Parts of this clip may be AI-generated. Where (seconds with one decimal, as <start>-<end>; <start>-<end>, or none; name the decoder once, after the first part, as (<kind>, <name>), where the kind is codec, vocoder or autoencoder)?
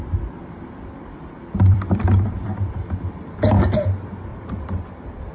0.4-3.6 (vocoder, BigVGAN v2); 4.3-5.3